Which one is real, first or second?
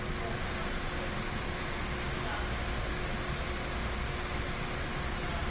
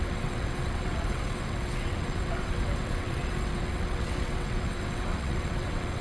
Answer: first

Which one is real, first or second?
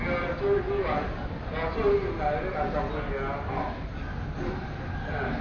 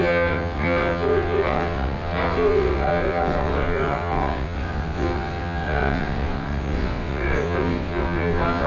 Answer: first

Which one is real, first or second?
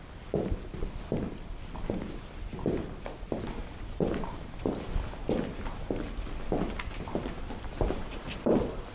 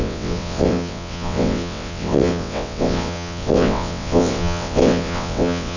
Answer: first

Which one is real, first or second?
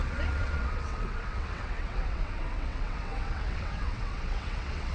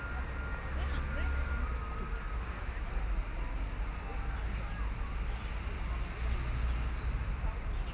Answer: second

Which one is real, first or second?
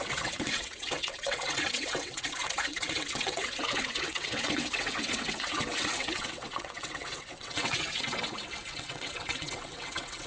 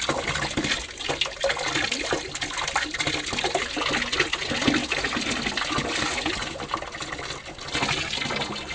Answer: second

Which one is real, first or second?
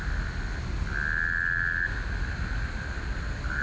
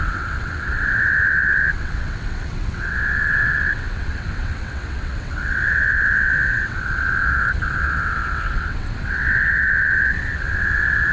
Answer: first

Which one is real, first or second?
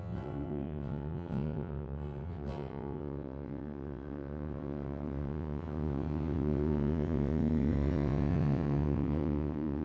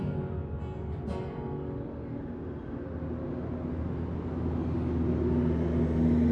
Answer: second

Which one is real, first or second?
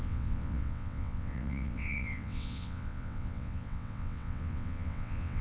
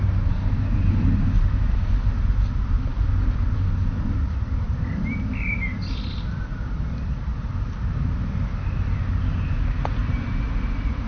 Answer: second